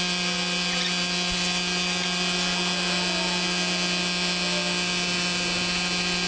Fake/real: real